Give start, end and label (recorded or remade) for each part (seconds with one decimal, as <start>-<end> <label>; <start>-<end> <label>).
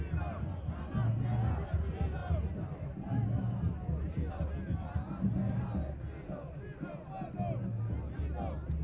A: 0.0-8.8 recorded